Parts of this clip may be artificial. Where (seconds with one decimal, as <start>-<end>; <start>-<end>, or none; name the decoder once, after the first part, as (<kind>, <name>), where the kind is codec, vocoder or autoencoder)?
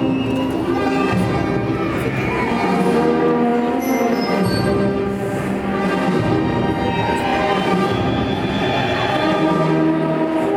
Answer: none